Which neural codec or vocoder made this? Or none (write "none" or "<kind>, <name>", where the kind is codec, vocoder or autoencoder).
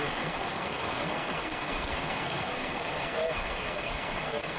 codec, SNAC